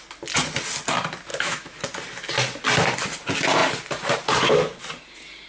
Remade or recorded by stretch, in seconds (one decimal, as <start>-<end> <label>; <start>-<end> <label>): 0.0-1.3 recorded; 1.3-1.8 remade; 1.8-5.5 recorded